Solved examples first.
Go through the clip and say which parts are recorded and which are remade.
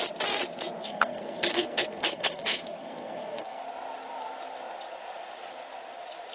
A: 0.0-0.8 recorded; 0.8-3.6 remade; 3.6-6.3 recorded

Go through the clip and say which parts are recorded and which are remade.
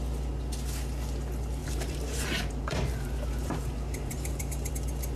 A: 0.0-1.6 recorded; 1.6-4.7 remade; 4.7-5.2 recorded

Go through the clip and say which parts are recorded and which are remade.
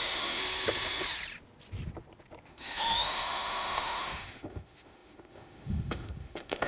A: 0.0-0.4 remade; 0.4-2.5 recorded; 2.5-6.7 remade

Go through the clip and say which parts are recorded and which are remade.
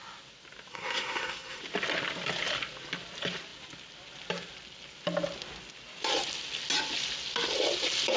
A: 0.0-0.7 recorded; 0.7-1.6 remade; 1.6-8.2 recorded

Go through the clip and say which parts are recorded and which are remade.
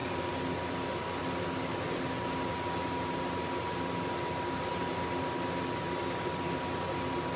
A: 0.0-7.4 recorded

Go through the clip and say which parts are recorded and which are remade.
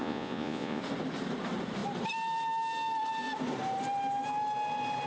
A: 0.0-0.8 remade; 0.8-5.1 recorded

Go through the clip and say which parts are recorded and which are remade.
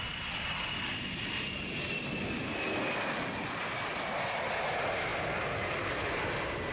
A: 0.0-6.7 recorded